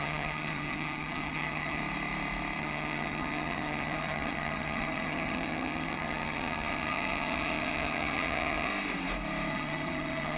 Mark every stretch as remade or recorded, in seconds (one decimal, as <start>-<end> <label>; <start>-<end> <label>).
0.0-1.8 remade; 1.8-2.6 recorded; 2.6-8.7 remade; 8.7-9.5 recorded; 9.5-10.4 remade